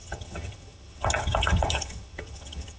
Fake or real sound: fake